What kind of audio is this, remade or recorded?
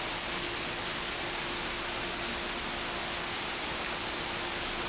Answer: recorded